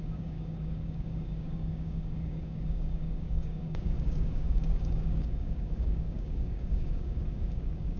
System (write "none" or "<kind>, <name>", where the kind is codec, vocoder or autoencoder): codec, DAC